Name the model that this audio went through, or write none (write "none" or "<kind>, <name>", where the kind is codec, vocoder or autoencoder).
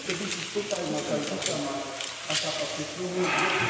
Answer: none